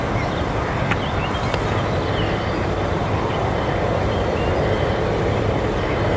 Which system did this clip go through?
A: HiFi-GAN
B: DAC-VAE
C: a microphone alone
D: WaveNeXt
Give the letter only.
C